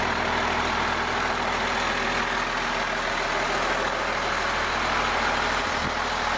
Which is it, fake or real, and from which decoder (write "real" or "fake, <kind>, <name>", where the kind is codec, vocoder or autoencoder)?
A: real